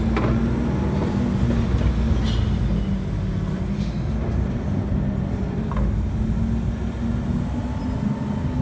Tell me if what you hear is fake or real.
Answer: real